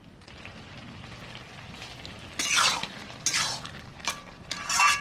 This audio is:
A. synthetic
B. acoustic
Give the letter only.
B